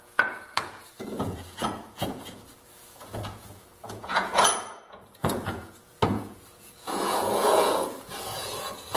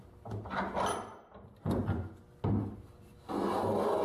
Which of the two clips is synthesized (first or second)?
first